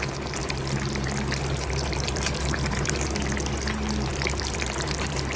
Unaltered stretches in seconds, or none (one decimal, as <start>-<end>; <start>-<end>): 0.0-0.4; 3.6-4.1